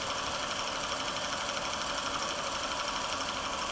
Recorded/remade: recorded